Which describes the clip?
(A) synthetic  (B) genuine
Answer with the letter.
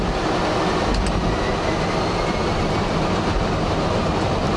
B